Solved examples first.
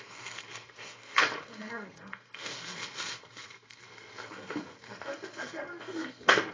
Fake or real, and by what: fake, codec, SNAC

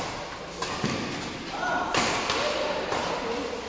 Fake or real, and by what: real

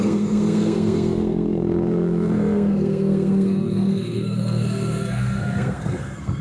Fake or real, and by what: fake, codec, SNAC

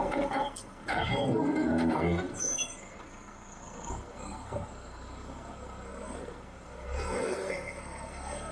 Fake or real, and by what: fake, codec, SNAC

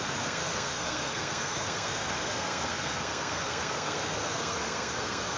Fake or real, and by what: fake, codec, SNAC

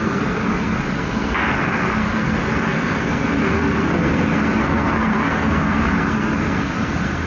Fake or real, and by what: fake, codec, SNAC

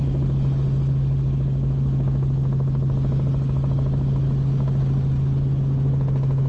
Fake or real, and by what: real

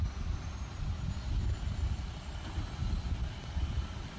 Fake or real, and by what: real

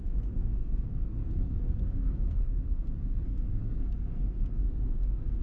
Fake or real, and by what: fake, codec, SNAC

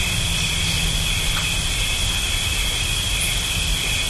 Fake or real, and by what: real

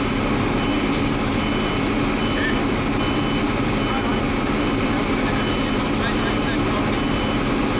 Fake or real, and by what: real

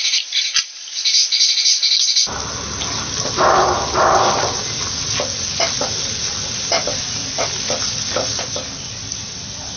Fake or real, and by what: real